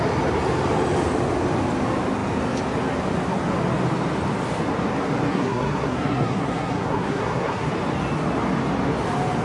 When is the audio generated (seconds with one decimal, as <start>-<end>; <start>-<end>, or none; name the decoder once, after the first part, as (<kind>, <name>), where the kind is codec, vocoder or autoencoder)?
5.3-7.7 (codec, SNAC)